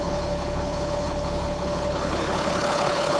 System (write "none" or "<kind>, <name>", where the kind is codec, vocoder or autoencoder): codec, HILCodec